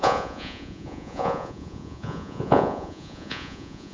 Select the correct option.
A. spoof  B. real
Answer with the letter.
A